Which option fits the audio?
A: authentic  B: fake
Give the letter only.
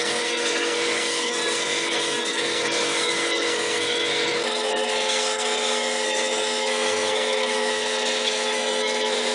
B